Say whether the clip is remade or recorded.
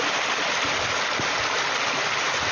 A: recorded